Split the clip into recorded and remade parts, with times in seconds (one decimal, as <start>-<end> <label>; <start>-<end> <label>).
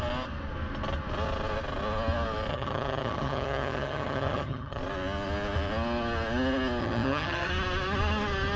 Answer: 0.0-2.5 recorded; 2.5-4.8 remade; 4.8-6.8 recorded; 6.8-7.5 remade; 7.5-8.6 recorded